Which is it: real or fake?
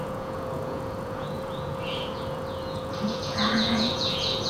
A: fake